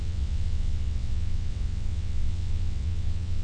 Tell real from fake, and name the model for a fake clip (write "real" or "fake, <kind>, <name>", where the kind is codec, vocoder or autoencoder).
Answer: fake, vocoder, WaveNeXt